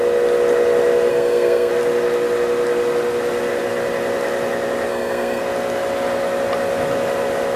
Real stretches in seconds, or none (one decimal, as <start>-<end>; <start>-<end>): 0.0-1.1; 1.7-4.9; 5.4-7.6